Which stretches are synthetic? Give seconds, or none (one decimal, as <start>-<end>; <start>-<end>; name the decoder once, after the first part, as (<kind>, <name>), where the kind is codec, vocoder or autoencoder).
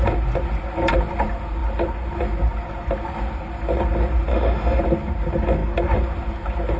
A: 4.3-4.8 (autoencoder, DAC-VAE)